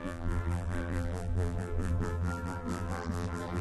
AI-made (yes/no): yes